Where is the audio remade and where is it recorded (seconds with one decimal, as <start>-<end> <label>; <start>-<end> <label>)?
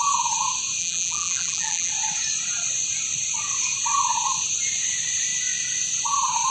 0.0-0.8 recorded; 0.8-1.9 remade; 1.9-6.5 recorded